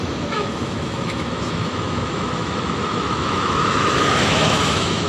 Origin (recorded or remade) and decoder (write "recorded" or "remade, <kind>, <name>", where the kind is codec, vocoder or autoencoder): remade, autoencoder, DAC-VAE